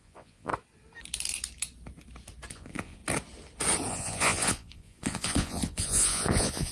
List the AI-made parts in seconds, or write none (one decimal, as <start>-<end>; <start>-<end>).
0.0-0.5; 2.5-3.0; 3.9-6.7